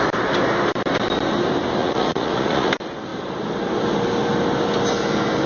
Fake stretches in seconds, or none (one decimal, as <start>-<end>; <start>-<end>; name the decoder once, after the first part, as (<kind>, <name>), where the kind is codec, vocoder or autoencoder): 1.8-2.7 (vocoder, Vocos)